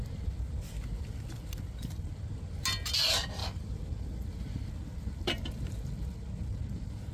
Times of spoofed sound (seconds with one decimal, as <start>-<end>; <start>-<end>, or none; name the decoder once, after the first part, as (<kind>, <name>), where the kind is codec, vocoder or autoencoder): none